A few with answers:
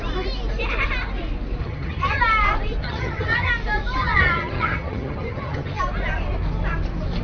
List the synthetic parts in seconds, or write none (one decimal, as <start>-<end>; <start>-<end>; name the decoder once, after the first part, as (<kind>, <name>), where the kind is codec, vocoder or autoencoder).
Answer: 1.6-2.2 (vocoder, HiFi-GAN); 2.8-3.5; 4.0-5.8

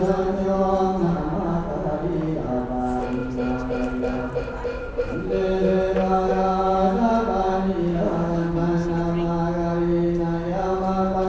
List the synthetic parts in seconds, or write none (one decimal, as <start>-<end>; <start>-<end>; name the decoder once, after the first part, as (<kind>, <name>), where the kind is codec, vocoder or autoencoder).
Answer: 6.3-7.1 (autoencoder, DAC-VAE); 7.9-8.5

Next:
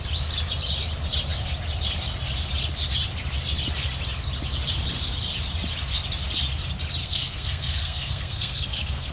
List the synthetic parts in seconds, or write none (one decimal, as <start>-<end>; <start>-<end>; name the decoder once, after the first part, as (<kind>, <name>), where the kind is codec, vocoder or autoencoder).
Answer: 7.0-9.1 (codec, SNAC)